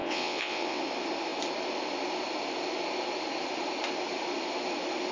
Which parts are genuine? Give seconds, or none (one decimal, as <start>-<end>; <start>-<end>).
0.8-5.1